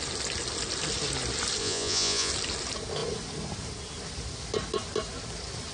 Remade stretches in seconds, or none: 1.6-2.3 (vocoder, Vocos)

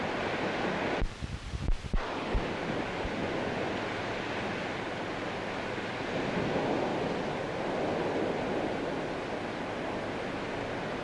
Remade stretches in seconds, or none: 3.2-3.7 (vocoder, Vocos)

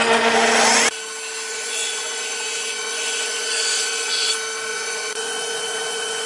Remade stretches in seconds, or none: 1.5-4.3 (vocoder, Vocos); 4.7-6.3

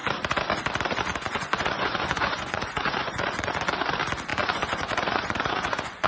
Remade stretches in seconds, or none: 1.1-3.5 (vocoder, Vocos); 4.3-6.1